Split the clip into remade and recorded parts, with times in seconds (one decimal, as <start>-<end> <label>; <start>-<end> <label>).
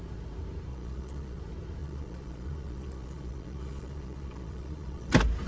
0.0-0.7 recorded; 0.7-1.4 remade; 1.4-1.8 recorded; 1.8-5.1 remade; 5.1-5.5 recorded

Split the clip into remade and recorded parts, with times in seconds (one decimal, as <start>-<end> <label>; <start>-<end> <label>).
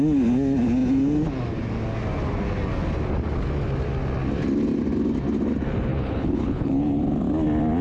0.0-5.9 recorded; 5.9-7.0 remade; 7.0-7.8 recorded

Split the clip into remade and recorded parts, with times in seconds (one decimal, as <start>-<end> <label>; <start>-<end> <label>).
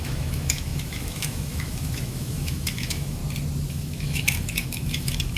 0.0-3.2 remade; 3.2-3.7 recorded; 3.7-5.4 remade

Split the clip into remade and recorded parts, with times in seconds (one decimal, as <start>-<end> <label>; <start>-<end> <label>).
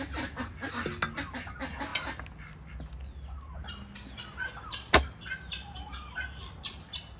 0.0-7.2 recorded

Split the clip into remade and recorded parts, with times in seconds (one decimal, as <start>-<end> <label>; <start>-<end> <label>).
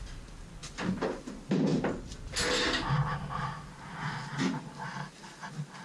0.0-5.8 recorded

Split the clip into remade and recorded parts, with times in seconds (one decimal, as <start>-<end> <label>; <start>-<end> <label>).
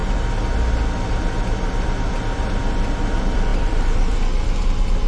0.0-3.5 recorded; 3.5-4.6 remade; 4.6-5.1 recorded